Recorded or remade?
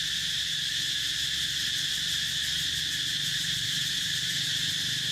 recorded